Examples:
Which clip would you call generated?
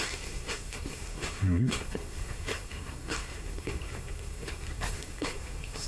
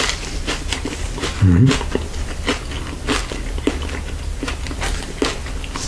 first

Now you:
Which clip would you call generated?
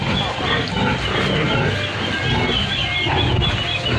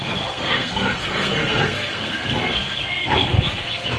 second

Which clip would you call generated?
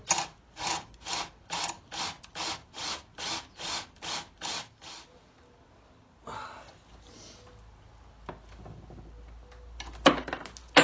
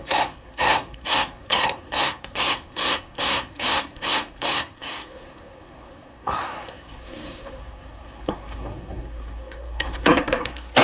second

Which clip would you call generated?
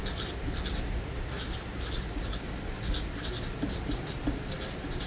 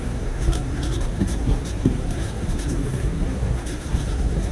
second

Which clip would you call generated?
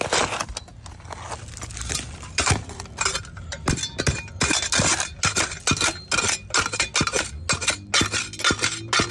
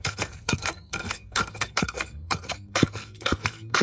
second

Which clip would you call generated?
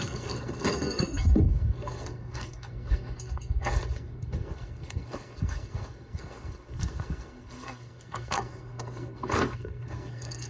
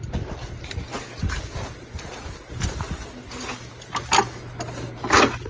first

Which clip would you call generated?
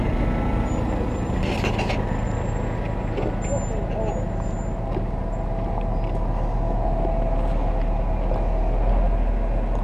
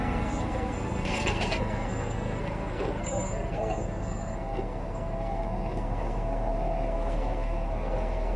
second